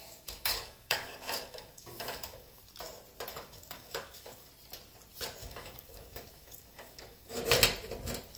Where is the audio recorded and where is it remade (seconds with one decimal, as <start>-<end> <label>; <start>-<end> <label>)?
0.0-2.6 remade; 2.6-3.3 recorded; 3.3-4.5 remade; 4.5-5.4 recorded; 5.4-7.4 remade; 7.4-8.4 recorded